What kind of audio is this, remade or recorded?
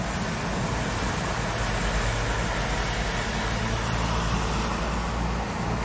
recorded